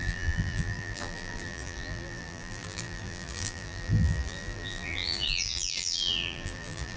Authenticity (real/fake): fake